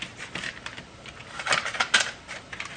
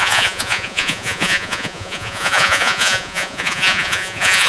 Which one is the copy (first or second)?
second